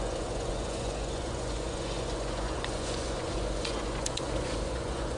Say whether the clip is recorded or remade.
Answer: remade